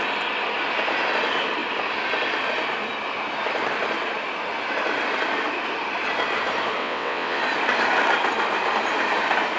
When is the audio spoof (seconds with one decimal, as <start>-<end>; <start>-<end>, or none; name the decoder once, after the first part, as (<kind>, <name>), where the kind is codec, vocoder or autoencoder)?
6.8-7.4 (vocoder, WaveNeXt)

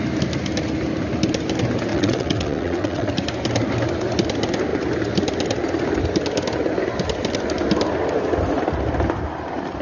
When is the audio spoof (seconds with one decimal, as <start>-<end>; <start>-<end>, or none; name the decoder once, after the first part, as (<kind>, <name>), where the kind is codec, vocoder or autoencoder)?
1.9-3.1 (vocoder, WaveNeXt)

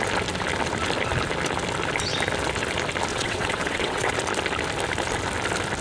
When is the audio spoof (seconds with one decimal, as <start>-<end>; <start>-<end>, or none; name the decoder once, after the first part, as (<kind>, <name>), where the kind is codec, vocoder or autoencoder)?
3.1-4.1 (vocoder, WaveNeXt)

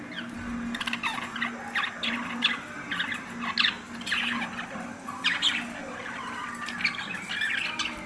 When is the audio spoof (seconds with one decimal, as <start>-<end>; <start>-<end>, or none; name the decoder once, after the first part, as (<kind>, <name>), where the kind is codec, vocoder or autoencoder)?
none